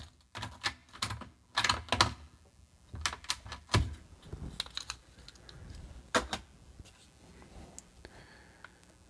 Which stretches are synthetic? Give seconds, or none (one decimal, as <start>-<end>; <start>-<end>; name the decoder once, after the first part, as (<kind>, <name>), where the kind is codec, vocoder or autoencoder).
none